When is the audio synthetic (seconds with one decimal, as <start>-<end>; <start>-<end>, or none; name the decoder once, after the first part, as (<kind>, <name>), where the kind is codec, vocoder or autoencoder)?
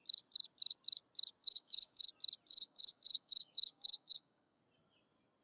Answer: 1.4-2.1 (codec, DAC); 2.5-4.6